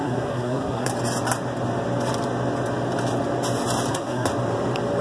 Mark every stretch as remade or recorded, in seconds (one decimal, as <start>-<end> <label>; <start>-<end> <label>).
0.0-0.9 remade; 0.9-3.9 recorded; 3.9-4.3 remade; 4.3-5.0 recorded